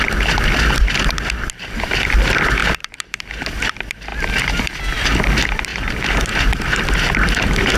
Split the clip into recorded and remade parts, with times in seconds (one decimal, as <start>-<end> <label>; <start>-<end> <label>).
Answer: 0.0-2.6 recorded; 2.6-3.2 remade; 3.2-5.7 recorded; 5.7-6.8 remade; 6.8-7.8 recorded

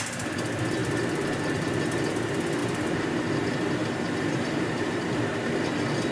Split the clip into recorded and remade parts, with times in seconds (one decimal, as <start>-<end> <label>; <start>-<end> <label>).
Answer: 0.0-3.8 recorded; 3.8-5.2 remade; 5.2-6.1 recorded

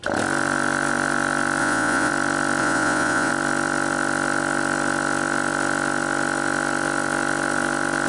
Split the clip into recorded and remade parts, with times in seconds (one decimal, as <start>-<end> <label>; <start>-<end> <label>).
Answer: 0.0-1.6 recorded; 1.6-2.1 remade; 2.1-2.6 recorded; 2.6-3.3 remade; 3.3-8.1 recorded

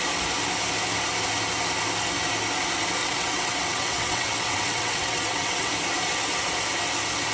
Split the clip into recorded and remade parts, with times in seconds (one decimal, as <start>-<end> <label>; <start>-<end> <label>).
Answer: 0.0-3.0 recorded; 3.0-5.7 remade; 5.7-7.3 recorded